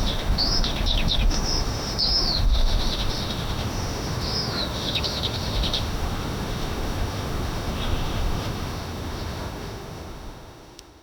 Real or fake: fake